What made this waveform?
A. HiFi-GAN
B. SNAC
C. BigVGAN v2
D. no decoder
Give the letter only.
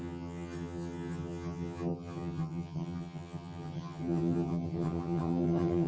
A